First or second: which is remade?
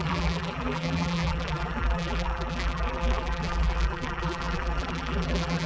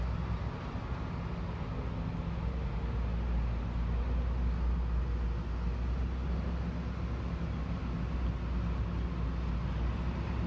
first